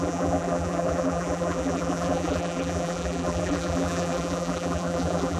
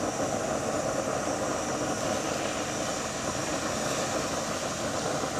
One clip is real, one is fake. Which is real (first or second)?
second